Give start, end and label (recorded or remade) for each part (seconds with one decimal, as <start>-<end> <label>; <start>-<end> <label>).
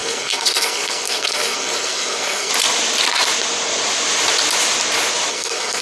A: 0.0-2.5 remade; 2.5-5.3 recorded; 5.3-5.8 remade